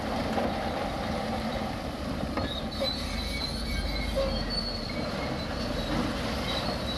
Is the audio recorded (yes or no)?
yes